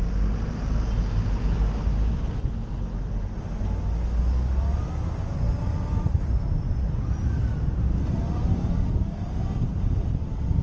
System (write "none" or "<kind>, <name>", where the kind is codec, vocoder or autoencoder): none